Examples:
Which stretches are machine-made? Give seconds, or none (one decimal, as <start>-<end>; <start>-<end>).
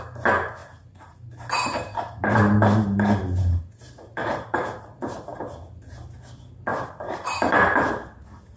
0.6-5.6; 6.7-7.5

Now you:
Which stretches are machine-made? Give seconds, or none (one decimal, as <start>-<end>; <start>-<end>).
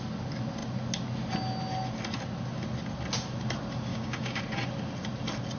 3.9-4.4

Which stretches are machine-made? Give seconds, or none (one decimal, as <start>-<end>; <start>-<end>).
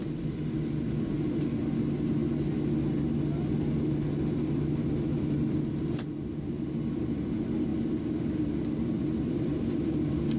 none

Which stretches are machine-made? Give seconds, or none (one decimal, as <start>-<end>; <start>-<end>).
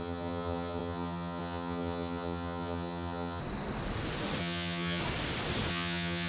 0.0-3.4; 4.4-5.0; 5.7-6.3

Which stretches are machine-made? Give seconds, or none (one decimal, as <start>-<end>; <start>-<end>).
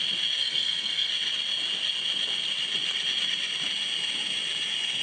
0.4-1.1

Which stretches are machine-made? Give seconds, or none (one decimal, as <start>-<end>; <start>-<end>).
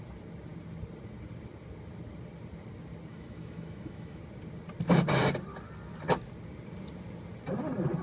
3.1-4.2